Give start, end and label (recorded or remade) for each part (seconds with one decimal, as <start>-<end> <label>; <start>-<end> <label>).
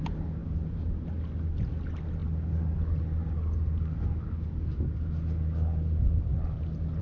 0.0-7.0 recorded